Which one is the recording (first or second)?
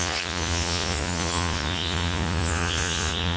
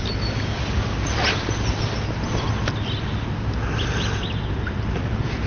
second